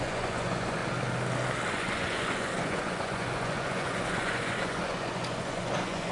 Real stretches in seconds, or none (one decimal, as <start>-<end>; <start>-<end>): 0.8-1.7

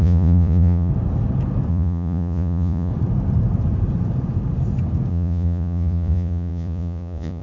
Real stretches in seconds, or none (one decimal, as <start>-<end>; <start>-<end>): 0.9-1.7; 2.9-5.1

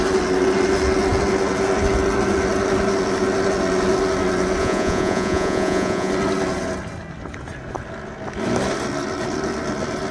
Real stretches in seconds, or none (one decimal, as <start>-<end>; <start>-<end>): 0.0-4.6; 6.1-10.1

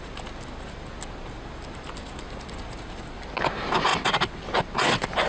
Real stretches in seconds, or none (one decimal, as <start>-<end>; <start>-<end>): 0.0-5.3

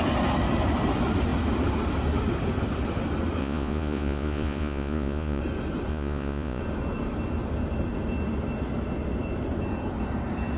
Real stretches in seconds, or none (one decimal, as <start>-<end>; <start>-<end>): 0.0-3.4; 5.4-5.9; 6.6-10.6